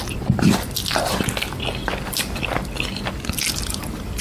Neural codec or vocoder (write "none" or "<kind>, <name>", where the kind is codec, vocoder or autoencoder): none